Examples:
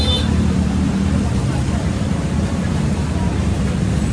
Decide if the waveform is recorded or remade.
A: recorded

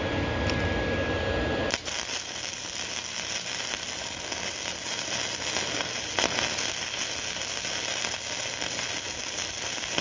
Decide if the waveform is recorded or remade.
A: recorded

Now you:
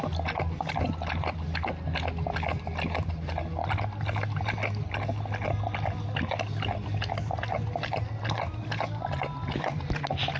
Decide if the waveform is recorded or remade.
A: recorded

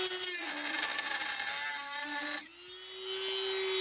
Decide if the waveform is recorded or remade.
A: recorded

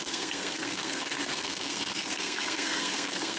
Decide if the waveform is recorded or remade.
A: remade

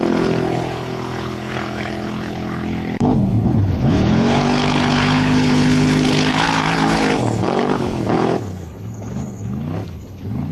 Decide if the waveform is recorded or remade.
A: remade